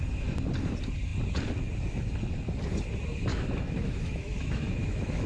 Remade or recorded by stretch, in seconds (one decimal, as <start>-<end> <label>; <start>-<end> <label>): 0.0-3.3 recorded; 3.3-5.3 remade